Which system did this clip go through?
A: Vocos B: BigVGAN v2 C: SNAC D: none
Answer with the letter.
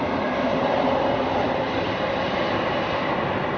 B